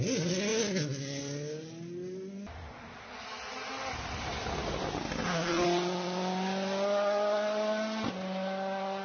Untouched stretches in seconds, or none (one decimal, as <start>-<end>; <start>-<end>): 0.0-9.0

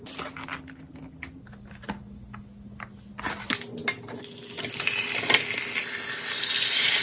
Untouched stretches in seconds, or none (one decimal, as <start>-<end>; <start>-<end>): 0.0-7.0

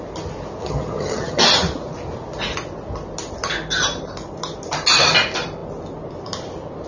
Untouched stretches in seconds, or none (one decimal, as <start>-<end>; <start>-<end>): 0.0-0.6; 1.4-6.9

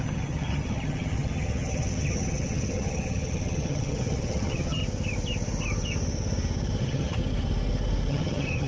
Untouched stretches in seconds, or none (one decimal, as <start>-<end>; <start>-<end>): 4.8-6.8; 7.2-8.1

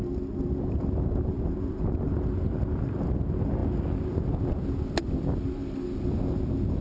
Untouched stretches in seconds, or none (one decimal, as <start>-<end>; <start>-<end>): 0.0-6.8

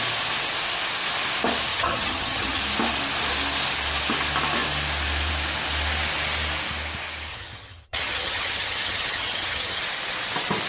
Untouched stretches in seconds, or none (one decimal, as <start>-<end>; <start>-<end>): 0.0-1.7; 2.6-7.3; 9.8-10.7

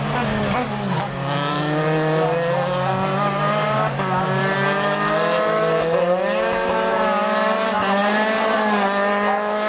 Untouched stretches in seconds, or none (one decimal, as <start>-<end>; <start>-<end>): 0.0-9.7

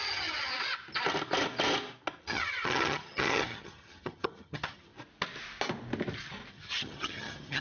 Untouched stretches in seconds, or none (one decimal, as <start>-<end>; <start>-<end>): 0.5-2.2; 4.9-6.5